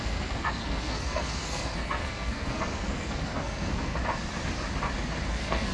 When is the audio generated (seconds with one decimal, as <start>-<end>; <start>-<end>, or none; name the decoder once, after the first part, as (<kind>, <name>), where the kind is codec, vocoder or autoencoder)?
0.0-4.0 (codec, SNAC); 5.3-5.7